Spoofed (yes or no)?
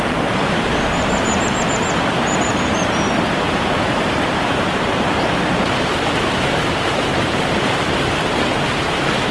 yes